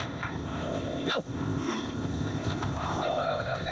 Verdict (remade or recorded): remade